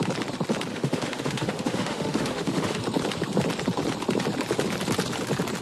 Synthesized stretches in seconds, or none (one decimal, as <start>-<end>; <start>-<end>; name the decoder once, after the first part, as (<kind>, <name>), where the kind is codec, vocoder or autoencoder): 0.7-2.8 (autoencoder, DAC-VAE)